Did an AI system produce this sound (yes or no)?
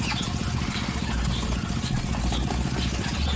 no